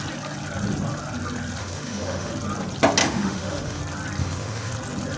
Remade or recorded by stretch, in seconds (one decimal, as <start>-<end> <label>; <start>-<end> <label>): 0.0-1.6 recorded; 1.6-2.3 remade; 2.3-3.0 recorded; 3.0-3.8 remade; 3.8-4.2 recorded; 4.2-4.7 remade; 4.7-5.2 recorded